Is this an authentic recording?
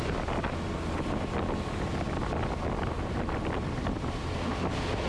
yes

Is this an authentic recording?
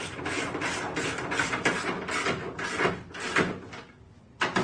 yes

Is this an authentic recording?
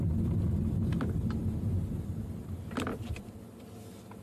no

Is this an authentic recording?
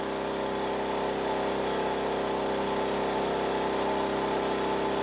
yes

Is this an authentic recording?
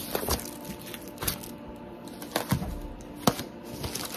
yes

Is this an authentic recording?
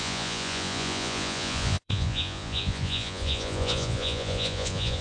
no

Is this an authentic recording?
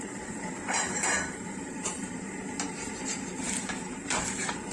no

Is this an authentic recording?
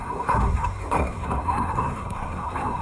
no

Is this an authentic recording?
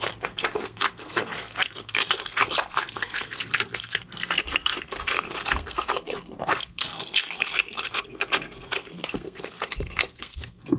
no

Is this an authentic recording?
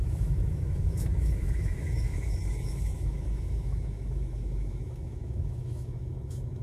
no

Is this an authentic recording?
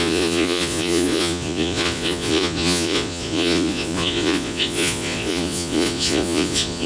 no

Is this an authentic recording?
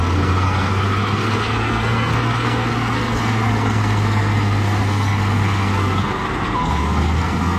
no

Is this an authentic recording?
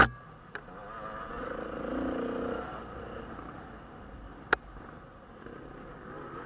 yes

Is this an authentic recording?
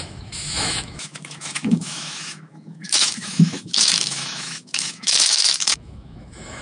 no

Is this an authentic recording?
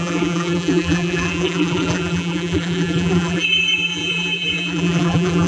no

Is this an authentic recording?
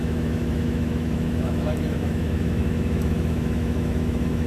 no